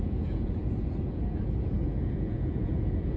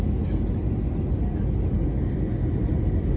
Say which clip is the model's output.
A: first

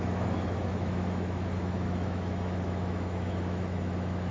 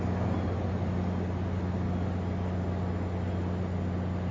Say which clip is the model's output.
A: first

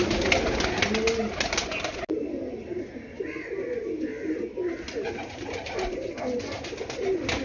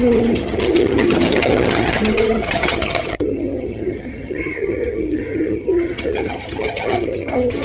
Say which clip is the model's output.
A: second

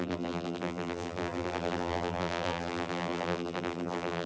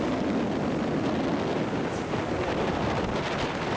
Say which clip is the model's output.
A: first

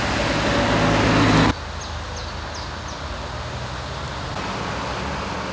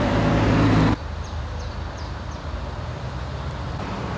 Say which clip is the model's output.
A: second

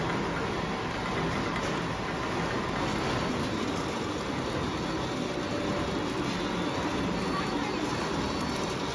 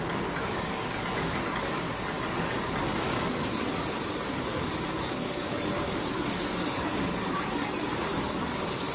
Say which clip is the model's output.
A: second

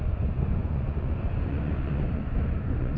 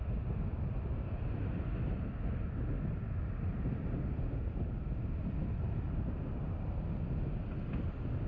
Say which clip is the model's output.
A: first